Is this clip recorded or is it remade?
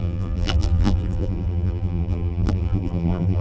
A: remade